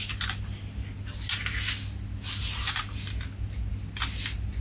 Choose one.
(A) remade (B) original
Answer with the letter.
B